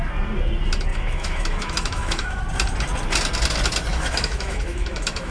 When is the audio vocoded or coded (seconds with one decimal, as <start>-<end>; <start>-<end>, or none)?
0.9-2.4; 3.9-5.3